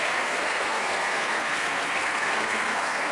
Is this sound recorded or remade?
remade